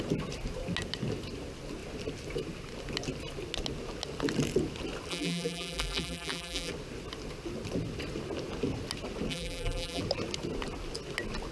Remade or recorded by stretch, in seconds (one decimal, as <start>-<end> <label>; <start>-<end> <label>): 0.0-5.1 recorded; 5.1-6.7 remade; 6.7-9.3 recorded; 9.3-10.0 remade; 10.0-11.5 recorded